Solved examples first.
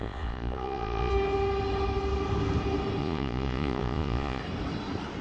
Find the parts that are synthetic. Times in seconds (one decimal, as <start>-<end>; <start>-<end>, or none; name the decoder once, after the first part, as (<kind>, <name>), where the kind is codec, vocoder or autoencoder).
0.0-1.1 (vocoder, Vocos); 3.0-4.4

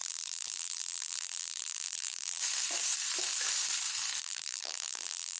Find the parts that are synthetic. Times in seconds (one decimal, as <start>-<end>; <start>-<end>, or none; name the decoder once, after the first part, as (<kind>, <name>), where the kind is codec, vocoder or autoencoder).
0.0-2.4 (vocoder, BigVGAN v2); 4.2-5.4

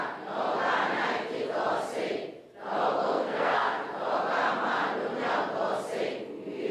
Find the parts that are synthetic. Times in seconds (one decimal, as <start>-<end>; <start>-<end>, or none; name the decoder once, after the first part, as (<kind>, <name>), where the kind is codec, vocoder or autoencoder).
3.0-3.8 (codec, SNAC)

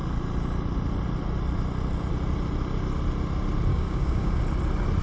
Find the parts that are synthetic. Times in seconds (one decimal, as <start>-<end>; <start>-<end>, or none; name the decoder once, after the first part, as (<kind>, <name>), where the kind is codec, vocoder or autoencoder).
3.7-4.4 (codec, DAC)

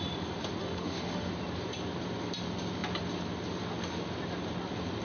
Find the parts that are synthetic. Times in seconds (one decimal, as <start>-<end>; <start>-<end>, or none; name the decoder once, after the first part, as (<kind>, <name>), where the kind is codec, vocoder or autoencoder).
0.6-1.3 (autoencoder, DAC-VAE)

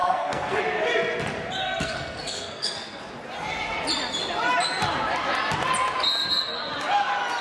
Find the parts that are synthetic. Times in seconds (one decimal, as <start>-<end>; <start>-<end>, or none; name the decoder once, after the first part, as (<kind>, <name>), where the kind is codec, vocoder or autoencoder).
0.0-0.6 (codec, SNAC); 1.6-3.0

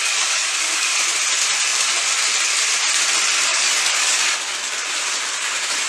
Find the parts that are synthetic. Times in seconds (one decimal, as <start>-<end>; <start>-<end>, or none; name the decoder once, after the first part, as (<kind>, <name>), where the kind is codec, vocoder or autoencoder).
0.0-1.0 (codec, DAC); 3.5-4.4

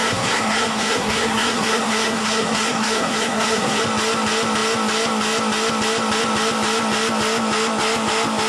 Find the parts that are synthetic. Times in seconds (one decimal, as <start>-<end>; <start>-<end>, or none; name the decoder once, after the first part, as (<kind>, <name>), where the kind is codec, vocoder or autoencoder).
0.0-3.8 (codec, SNAC)